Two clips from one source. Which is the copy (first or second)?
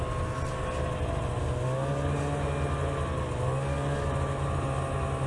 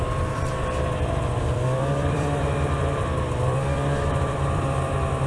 second